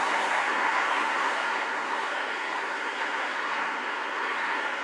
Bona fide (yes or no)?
no